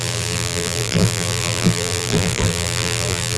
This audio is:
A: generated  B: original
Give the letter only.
A